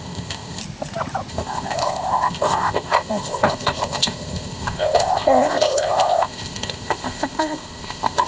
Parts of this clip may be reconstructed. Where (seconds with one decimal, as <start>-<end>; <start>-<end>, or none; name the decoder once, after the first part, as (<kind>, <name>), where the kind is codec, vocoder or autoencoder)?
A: 0.0-0.6 (codec, ZipCodec); 1.3-8.3